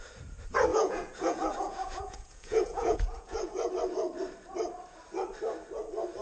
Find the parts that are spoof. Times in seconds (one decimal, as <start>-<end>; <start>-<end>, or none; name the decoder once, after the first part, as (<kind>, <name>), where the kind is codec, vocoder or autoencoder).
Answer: 0.7-3.7 (vocoder, Vocos)